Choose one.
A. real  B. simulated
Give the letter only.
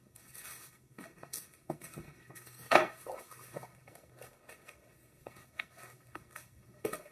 B